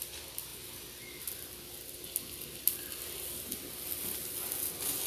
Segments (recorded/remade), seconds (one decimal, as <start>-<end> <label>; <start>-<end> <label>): 0.0-5.1 recorded